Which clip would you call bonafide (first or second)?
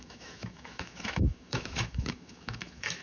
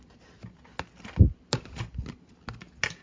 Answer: second